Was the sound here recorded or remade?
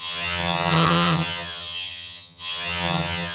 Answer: remade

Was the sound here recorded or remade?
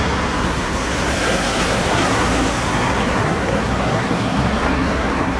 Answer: remade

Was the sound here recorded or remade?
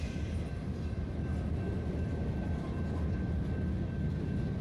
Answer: recorded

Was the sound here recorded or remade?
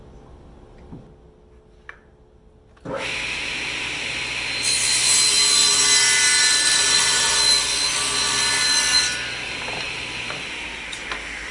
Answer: recorded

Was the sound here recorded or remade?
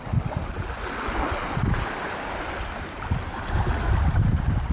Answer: recorded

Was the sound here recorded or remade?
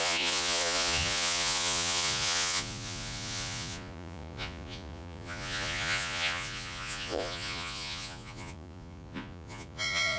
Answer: remade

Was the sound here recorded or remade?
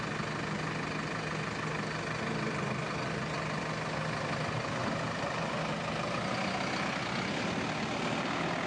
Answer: recorded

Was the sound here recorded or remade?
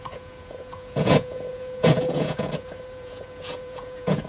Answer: remade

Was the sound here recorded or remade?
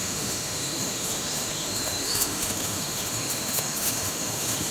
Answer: remade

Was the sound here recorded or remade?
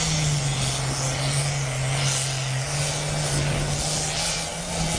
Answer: recorded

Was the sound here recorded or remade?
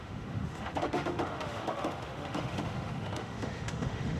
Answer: remade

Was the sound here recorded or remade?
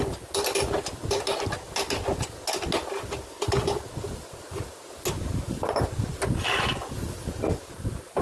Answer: recorded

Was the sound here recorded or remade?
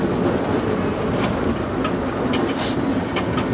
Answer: recorded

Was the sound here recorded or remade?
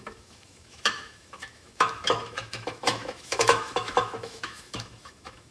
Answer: remade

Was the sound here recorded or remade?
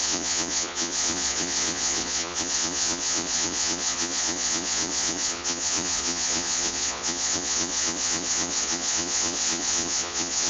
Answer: remade